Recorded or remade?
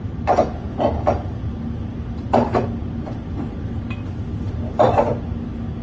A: recorded